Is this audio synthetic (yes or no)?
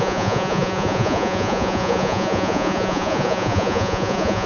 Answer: yes